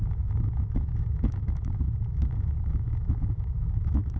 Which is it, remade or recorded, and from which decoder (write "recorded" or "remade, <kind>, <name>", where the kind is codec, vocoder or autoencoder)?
remade, autoencoder, DAC-VAE